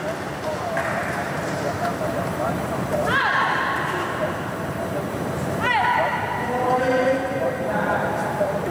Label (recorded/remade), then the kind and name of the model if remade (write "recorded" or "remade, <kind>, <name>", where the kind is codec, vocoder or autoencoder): remade, vocoder, BigVGAN v2